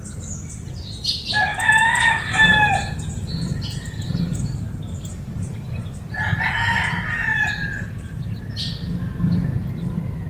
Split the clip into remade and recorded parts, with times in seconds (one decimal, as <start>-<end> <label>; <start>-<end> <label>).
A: 0.0-3.5 recorded; 3.5-5.1 remade; 5.1-10.3 recorded